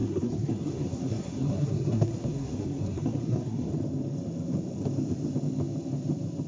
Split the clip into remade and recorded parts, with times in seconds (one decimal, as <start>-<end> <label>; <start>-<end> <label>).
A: 0.0-3.7 remade; 3.7-6.5 recorded